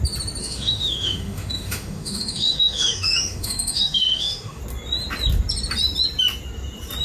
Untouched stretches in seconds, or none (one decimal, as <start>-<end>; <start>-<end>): 0.0-0.4; 4.6-7.0